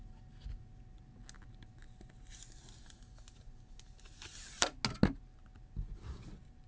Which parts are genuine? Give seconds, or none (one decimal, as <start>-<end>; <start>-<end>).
0.0-6.7